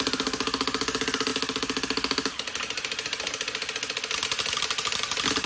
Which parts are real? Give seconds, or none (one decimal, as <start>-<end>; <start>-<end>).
0.0-5.5